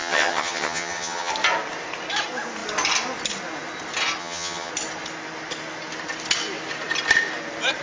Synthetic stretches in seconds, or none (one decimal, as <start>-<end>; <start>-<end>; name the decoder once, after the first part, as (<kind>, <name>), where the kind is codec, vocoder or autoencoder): 0.0-1.3 (vocoder, HiFi-GAN); 4.2-4.7